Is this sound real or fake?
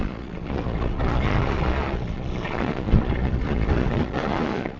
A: fake